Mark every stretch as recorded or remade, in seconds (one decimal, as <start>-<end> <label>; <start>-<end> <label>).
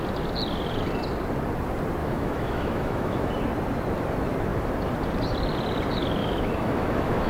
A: 0.0-2.0 recorded; 2.0-3.3 remade; 3.3-6.2 recorded; 6.2-7.3 remade